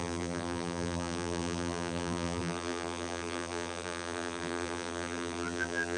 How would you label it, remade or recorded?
remade